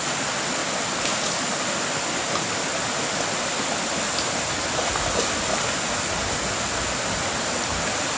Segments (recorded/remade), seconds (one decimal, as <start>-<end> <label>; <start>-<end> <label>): 0.0-8.2 recorded